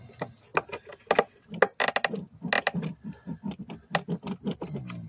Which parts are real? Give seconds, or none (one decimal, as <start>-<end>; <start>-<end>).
0.0-5.1